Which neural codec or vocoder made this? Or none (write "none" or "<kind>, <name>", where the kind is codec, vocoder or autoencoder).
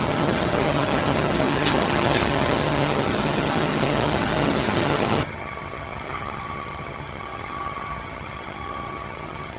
vocoder, HiFi-GAN